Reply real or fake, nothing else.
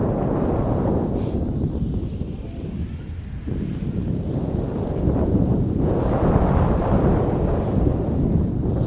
real